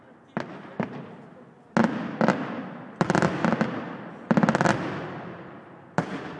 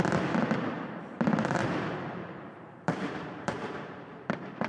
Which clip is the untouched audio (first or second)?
first